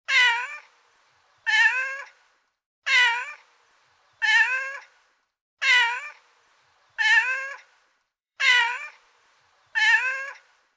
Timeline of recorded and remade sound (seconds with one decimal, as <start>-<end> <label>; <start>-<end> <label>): 0.0-7.9 recorded; 7.9-9.4 remade; 9.4-10.8 recorded